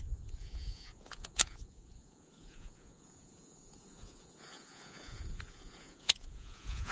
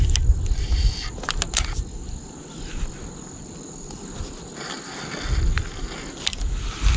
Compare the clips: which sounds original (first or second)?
second